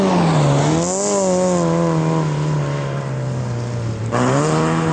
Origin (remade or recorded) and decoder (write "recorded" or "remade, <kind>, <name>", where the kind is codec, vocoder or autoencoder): recorded